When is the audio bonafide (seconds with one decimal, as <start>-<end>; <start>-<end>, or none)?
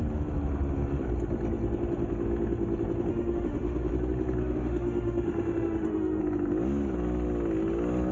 0.0-3.1; 3.9-4.4; 6.2-8.1